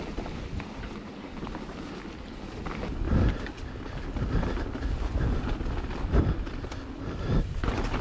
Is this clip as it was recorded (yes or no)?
yes